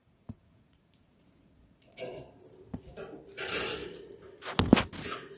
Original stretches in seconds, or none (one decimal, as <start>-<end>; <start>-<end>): 2.2-5.4